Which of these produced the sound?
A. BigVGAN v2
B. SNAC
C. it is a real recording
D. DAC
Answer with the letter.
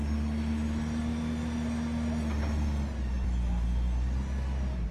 C